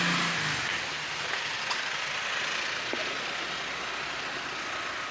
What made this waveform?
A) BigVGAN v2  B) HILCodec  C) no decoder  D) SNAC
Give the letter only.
C